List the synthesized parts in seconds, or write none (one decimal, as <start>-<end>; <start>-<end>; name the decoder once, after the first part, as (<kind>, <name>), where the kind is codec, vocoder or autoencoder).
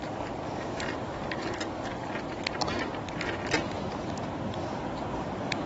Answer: 1.0-2.1 (codec, DAC)